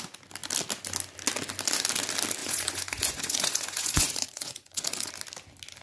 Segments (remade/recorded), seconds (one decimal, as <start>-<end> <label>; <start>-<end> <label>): 0.0-2.4 recorded; 2.4-5.1 remade; 5.1-5.8 recorded